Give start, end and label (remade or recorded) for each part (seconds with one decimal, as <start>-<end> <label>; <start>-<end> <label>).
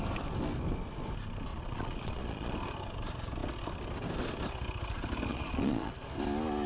0.0-1.5 recorded; 1.5-2.5 remade; 2.5-5.3 recorded; 5.3-5.9 remade; 5.9-6.7 recorded